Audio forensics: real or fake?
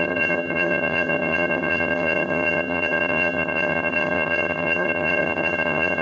fake